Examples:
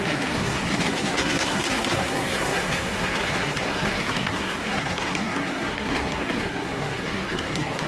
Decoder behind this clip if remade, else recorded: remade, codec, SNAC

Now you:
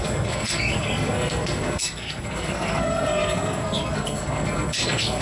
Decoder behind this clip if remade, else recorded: remade, codec, SNAC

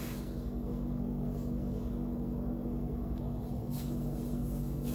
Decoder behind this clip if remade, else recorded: remade, codec, SNAC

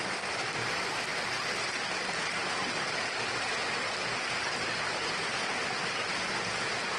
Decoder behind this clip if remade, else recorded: recorded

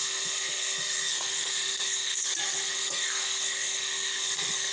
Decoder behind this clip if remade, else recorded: remade, codec, SNAC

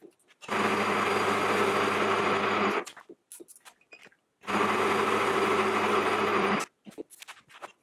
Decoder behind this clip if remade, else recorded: recorded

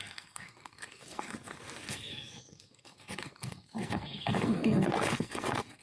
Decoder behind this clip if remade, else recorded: remade, codec, SNAC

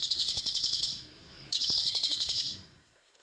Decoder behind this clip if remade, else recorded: remade, codec, SNAC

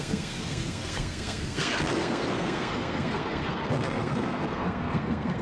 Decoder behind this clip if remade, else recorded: remade, codec, SNAC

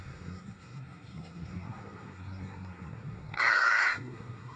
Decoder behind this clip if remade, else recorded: remade, codec, SNAC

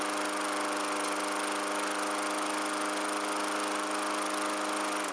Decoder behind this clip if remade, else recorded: recorded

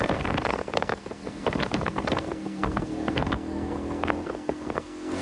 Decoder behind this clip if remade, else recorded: remade, codec, SNAC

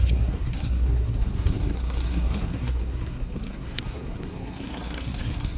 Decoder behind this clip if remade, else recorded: remade, codec, SNAC